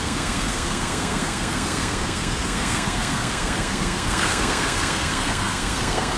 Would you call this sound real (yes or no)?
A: no